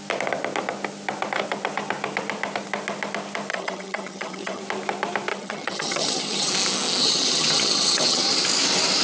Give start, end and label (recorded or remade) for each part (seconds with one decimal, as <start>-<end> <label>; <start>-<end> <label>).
0.0-3.5 recorded; 3.5-4.6 remade; 4.6-5.3 recorded; 5.3-6.5 remade; 6.5-7.0 recorded; 7.0-8.2 remade; 8.2-9.0 recorded